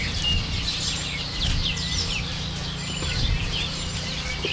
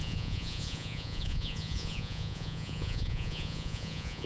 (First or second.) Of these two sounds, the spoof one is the second